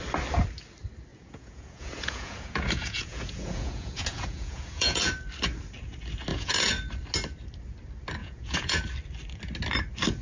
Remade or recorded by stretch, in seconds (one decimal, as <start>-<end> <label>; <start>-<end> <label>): 0.0-1.1 recorded; 1.1-5.1 remade; 5.1-6.3 recorded; 6.3-6.8 remade; 6.8-8.2 recorded; 8.2-8.8 remade; 8.8-10.2 recorded